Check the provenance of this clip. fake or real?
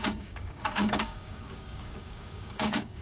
fake